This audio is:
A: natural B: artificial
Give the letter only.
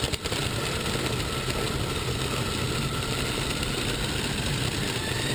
A